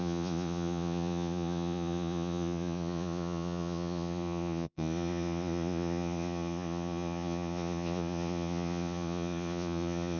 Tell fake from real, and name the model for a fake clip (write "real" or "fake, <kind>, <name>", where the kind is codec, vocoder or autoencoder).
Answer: fake, vocoder, Vocos